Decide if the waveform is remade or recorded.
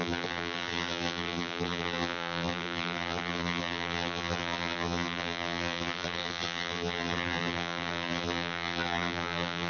remade